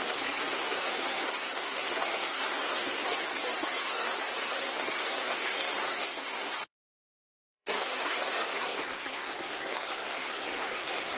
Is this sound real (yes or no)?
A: no